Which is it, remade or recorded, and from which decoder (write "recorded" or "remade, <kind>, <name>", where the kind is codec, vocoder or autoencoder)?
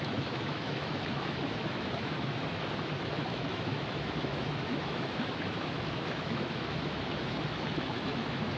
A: remade, autoencoder, DAC-VAE